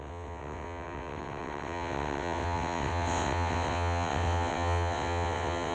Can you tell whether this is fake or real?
fake